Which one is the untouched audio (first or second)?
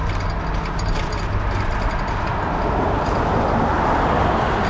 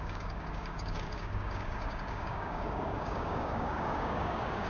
first